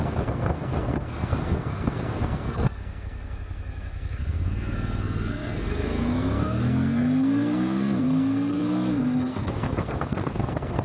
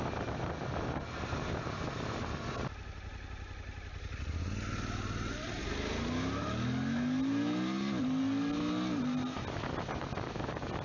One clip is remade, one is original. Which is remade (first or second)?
first